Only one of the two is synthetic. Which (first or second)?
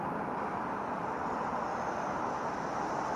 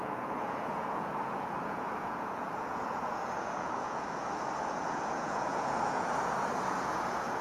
second